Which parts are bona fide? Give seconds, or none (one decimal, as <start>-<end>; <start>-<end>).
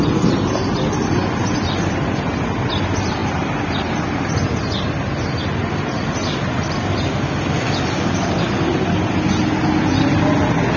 0.0-10.8